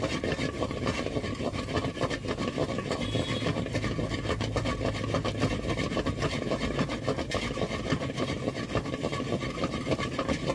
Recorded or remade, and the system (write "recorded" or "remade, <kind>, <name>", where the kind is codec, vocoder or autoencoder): recorded